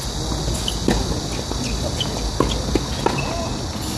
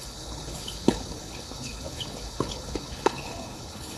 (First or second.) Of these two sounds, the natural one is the first